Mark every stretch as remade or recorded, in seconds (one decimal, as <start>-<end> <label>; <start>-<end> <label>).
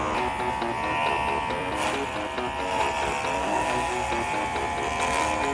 0.0-3.4 recorded; 3.4-4.1 remade; 4.1-5.5 recorded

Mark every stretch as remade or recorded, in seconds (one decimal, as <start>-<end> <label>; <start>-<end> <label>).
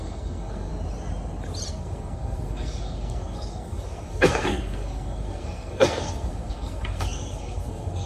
0.0-0.7 remade; 0.7-1.7 recorded; 1.7-8.1 remade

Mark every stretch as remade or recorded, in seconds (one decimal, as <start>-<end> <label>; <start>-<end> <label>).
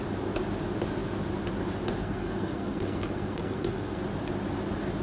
0.0-2.0 recorded; 2.0-4.0 remade; 4.0-5.0 recorded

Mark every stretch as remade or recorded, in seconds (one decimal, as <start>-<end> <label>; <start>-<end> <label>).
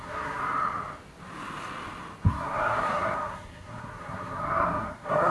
0.0-0.4 remade; 0.4-2.3 recorded; 2.3-5.3 remade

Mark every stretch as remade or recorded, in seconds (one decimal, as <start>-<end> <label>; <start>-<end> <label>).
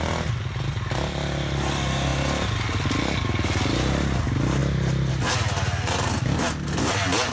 0.0-7.3 recorded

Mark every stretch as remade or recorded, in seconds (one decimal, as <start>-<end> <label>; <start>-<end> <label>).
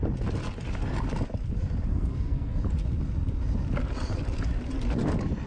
0.0-1.9 recorded; 1.9-2.6 remade; 2.6-5.5 recorded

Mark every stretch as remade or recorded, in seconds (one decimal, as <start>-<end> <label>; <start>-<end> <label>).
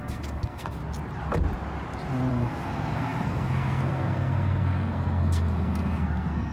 0.0-0.8 remade; 0.8-2.3 recorded; 2.3-6.5 remade